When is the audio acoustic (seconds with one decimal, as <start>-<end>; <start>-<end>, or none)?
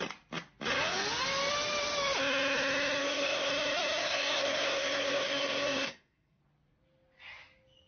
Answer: 0.0-3.0; 3.5-4.0; 6.4-7.9